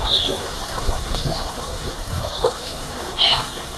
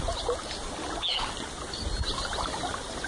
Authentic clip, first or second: second